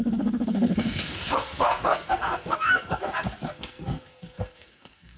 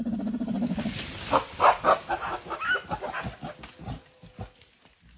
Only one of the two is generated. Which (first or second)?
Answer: first